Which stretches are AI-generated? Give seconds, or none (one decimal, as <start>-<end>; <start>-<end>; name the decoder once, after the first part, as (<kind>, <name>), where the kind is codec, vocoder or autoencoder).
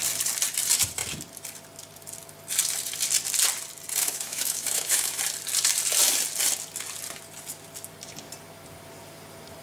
4.0-5.2 (autoencoder, DAC-VAE)